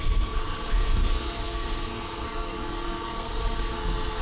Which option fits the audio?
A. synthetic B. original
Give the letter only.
A